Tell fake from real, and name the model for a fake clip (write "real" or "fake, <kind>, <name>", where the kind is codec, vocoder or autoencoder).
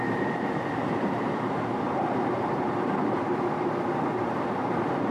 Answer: fake, vocoder, BigVGAN v2